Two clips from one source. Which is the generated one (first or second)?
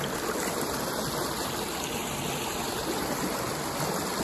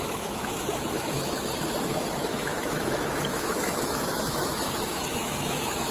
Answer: second